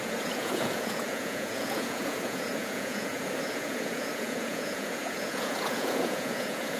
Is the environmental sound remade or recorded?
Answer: remade